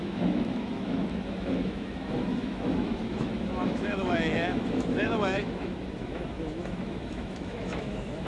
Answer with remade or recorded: remade